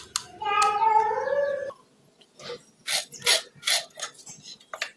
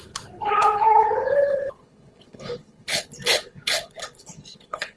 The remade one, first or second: second